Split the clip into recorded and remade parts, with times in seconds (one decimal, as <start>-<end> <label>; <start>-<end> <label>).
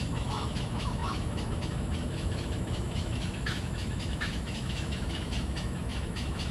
0.0-6.5 remade